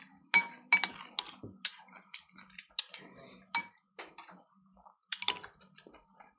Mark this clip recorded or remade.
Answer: recorded